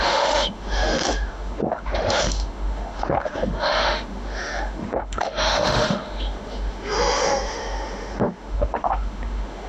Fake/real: fake